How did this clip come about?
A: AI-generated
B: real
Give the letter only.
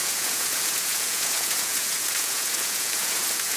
A